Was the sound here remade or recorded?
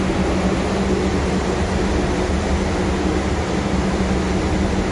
recorded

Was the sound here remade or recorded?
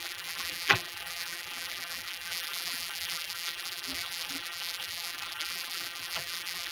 remade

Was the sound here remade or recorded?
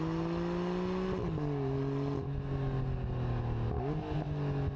recorded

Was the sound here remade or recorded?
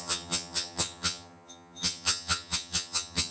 remade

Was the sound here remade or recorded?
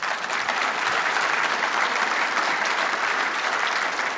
remade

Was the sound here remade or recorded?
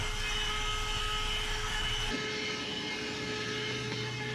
recorded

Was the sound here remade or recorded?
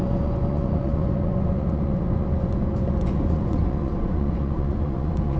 remade